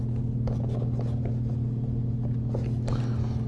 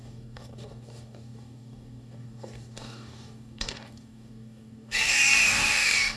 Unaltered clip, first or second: first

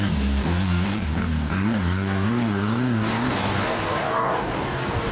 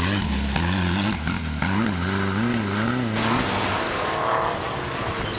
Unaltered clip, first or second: second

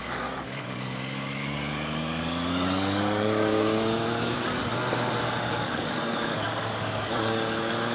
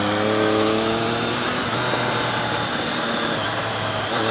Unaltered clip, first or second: second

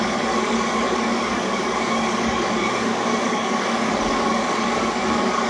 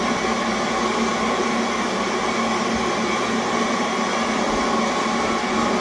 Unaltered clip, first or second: second